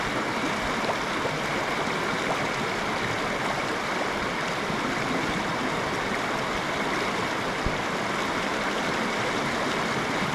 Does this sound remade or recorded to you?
recorded